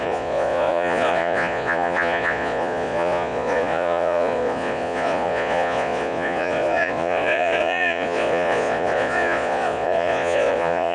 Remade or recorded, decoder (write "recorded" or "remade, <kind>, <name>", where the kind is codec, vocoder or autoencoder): remade, vocoder, Vocos